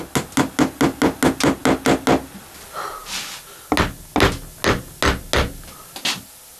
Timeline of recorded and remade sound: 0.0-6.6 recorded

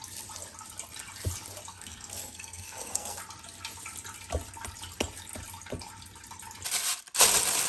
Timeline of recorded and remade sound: 0.0-1.7 recorded; 1.7-3.2 remade; 3.2-7.7 recorded